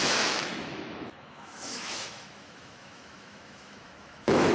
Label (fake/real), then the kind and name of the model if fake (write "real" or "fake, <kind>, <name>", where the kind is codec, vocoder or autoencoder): fake, autoencoder, DAC-VAE